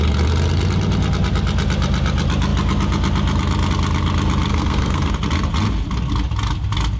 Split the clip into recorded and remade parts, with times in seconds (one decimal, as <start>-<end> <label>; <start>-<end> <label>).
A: 0.0-4.5 recorded; 4.5-5.1 remade; 5.1-7.0 recorded